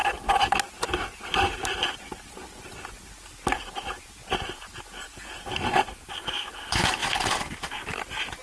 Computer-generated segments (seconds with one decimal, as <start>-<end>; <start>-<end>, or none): none